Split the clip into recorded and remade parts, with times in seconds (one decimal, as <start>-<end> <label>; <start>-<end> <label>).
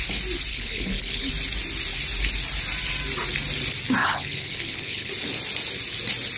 0.0-0.5 recorded; 0.5-1.3 remade; 1.3-4.0 recorded; 4.0-5.1 remade; 5.1-6.4 recorded